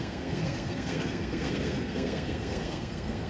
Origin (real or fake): fake